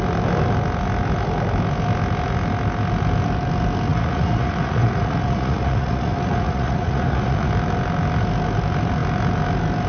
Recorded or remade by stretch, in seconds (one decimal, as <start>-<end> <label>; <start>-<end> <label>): 0.0-3.9 recorded; 3.9-7.5 remade; 7.5-9.9 recorded